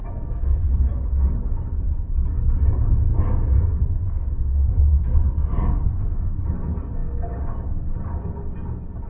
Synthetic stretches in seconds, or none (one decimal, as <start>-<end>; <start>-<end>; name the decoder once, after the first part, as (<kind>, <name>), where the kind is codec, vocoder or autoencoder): 0.0-0.7 (codec, SNAC); 3.1-6.3